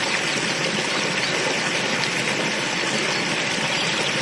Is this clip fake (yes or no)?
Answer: no